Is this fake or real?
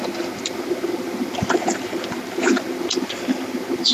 real